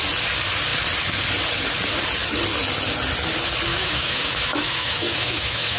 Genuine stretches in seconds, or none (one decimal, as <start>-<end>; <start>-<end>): 0.0-3.7